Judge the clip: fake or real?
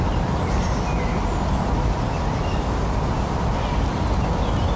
real